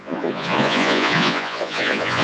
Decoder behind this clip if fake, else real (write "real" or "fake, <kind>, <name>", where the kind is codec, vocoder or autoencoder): fake, vocoder, Vocos